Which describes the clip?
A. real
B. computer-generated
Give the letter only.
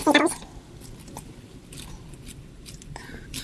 A